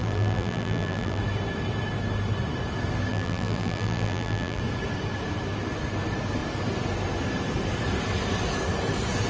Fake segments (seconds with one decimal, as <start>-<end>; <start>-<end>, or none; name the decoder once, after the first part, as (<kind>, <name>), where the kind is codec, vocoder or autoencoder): 0.0-1.2 (vocoder, BigVGAN v2); 3.1-4.6